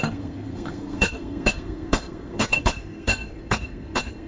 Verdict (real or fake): fake